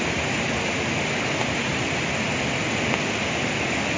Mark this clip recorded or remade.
recorded